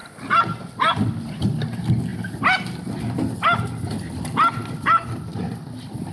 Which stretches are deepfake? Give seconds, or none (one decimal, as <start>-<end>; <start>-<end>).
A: none